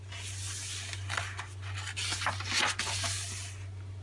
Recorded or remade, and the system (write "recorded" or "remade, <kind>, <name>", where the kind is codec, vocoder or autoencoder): recorded